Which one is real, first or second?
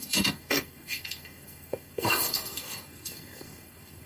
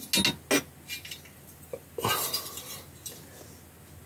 second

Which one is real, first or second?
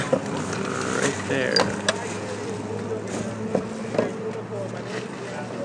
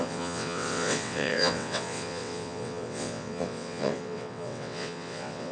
first